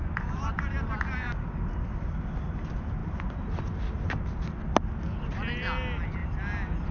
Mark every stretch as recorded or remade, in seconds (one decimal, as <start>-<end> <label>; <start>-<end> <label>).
0.0-6.9 recorded